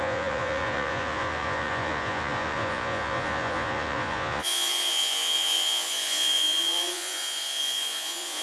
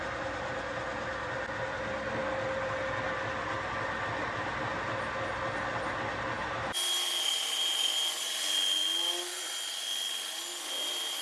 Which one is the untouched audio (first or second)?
second